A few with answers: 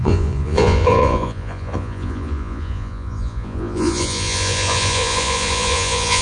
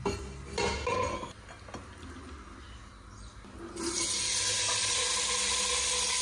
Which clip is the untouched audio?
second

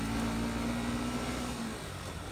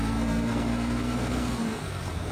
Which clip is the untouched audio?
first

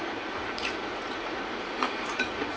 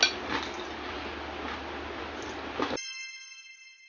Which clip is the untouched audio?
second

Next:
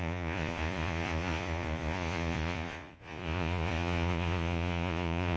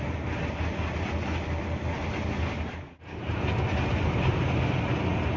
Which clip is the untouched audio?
second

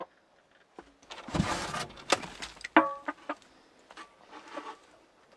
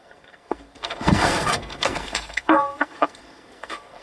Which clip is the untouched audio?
first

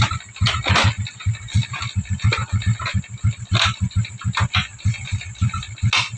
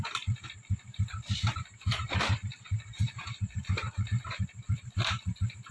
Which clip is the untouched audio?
first